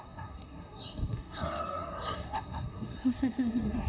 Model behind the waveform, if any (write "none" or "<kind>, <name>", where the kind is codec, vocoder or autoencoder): codec, SNAC